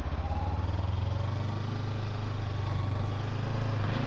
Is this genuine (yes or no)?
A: yes